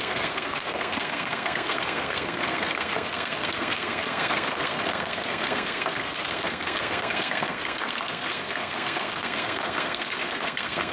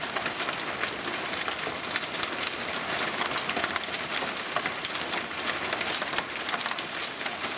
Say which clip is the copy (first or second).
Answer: first